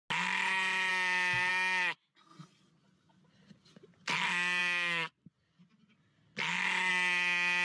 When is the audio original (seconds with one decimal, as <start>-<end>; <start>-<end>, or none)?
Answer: 0.0-7.6